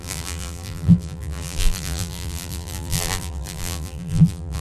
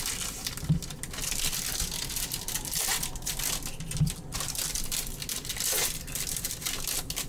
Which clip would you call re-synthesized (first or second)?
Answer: first